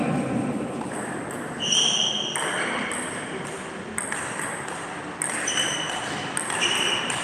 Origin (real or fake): fake